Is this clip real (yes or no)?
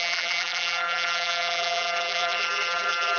no